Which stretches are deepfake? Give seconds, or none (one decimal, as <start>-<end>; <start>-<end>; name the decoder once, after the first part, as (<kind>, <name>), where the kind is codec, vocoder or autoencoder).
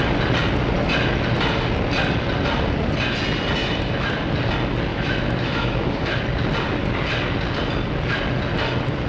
3.6-4.2 (autoencoder, DAC-VAE); 4.9-6.2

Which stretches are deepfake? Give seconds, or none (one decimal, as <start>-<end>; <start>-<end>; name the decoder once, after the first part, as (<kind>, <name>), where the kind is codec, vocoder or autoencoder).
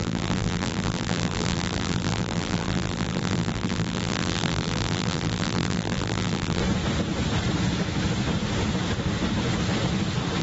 0.0-6.6 (vocoder, BigVGAN v2)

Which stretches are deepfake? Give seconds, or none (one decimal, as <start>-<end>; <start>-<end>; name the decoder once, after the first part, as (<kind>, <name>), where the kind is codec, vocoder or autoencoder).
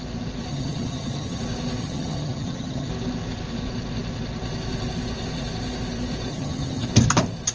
0.5-1.4 (vocoder, HiFi-GAN); 1.8-2.9; 6.3-6.9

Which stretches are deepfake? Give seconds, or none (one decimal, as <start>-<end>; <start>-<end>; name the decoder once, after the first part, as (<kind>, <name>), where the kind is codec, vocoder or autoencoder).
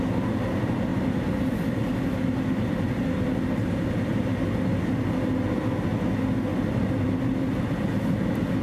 6.5-7.9 (vocoder, BigVGAN v2)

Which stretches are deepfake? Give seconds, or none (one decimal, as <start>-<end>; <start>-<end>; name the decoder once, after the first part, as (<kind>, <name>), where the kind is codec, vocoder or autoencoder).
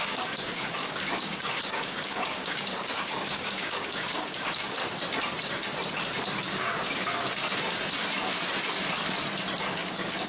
0.0-4.8 (codec, DAC); 6.4-7.4; 9.6-10.3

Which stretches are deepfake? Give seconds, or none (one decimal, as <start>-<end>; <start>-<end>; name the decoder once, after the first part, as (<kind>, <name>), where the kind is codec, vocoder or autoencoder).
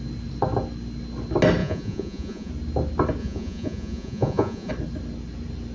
1.6-2.5 (vocoder, Vocos); 3.2-4.7